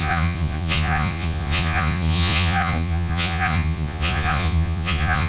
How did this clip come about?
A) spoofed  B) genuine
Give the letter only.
A